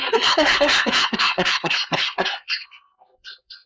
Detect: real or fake fake